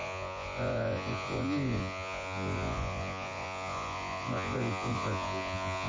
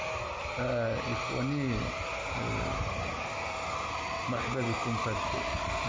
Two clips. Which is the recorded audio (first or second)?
second